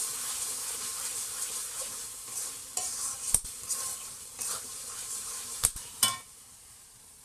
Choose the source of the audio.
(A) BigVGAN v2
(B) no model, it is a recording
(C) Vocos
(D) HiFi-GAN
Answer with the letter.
A